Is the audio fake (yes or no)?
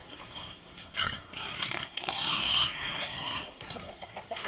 yes